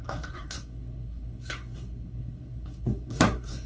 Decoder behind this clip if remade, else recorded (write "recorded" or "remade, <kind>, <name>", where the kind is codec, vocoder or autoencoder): remade, codec, SNAC